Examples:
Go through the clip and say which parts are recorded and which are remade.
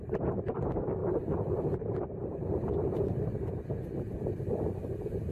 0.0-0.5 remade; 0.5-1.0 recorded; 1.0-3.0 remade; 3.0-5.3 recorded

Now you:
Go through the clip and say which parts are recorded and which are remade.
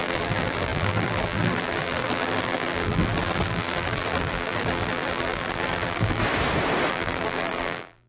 0.0-6.2 remade; 6.2-6.9 recorded; 6.9-8.1 remade